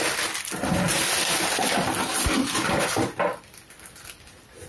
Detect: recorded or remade recorded